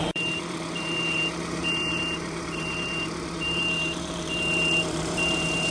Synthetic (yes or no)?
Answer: yes